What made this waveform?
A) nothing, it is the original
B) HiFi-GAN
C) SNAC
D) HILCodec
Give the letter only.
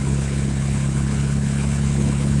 D